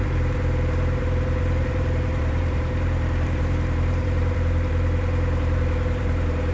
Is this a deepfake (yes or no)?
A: yes